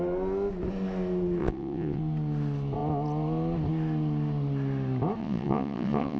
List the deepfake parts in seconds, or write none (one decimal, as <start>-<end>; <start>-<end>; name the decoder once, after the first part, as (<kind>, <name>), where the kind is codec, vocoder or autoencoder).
1.4-2.0 (vocoder, WaveNeXt); 5.2-6.2

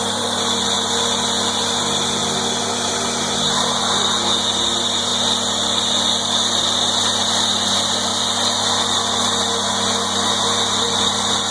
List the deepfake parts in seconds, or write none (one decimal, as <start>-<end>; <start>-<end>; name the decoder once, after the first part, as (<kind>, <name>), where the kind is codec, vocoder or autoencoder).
none